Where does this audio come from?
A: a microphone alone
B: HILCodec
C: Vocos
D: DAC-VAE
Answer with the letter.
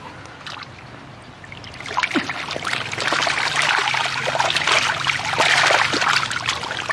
A